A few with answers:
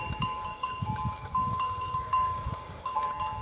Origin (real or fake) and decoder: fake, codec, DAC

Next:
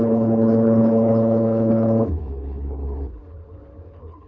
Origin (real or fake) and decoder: fake, codec, HILCodec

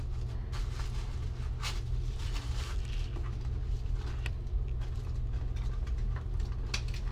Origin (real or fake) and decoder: real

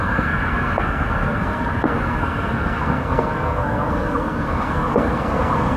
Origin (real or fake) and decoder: fake, codec, SNAC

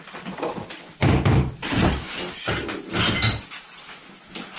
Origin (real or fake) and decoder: real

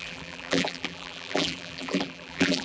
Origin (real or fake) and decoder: fake, vocoder, BigVGAN v2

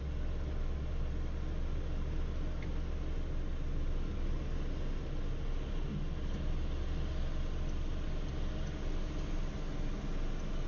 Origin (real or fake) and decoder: real